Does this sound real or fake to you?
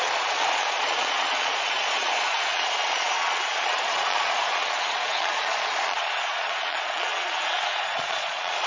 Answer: fake